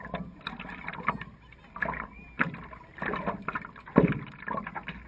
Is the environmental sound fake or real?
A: real